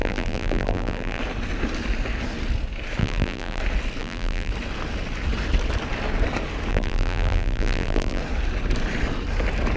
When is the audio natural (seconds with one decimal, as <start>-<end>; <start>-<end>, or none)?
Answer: 1.2-3.0; 3.6-4.0; 4.5-6.7; 8.2-9.8